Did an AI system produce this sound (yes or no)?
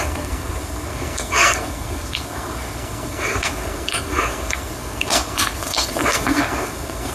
yes